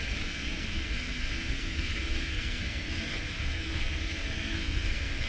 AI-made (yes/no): yes